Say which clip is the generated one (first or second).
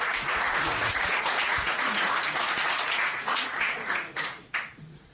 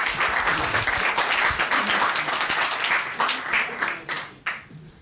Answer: first